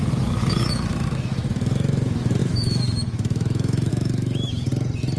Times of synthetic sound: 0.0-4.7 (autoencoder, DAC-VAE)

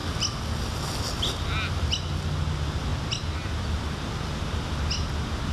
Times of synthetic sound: none